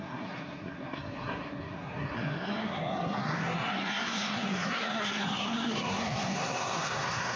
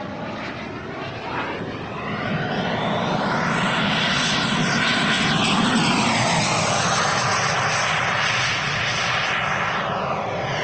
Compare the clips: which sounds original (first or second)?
second